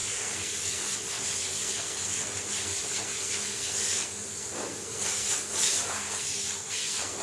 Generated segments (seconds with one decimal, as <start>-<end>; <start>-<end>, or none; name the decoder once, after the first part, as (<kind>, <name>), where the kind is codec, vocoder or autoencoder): 0.0-7.2 (codec, SNAC)